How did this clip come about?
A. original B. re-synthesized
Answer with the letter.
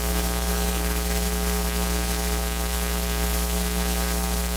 B